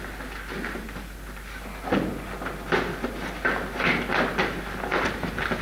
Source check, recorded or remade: recorded